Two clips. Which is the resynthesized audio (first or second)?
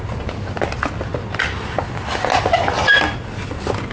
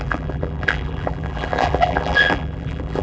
second